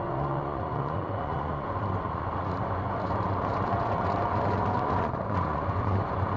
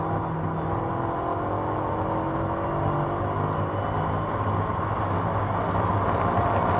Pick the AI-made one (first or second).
first